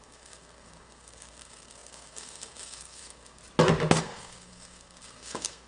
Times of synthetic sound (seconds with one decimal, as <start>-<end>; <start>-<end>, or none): 0.0-3.4; 4.0-5.7